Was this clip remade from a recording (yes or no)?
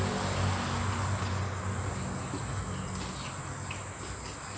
no